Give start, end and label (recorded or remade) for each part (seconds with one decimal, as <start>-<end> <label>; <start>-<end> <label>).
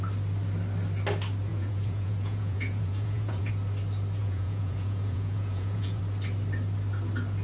0.0-1.5 recorded; 1.5-3.5 remade; 3.5-4.2 recorded; 4.2-6.0 remade; 6.0-7.4 recorded